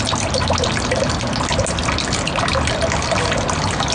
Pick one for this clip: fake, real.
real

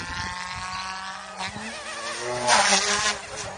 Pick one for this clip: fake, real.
real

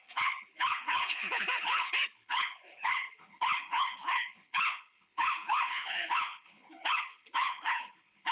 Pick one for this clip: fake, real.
fake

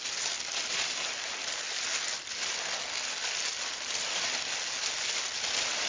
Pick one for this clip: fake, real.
real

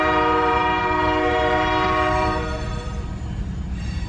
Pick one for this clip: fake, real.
fake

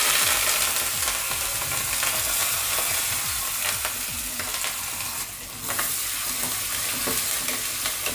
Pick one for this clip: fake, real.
real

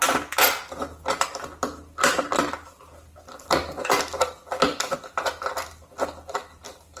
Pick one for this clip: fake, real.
real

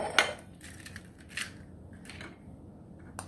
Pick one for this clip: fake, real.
real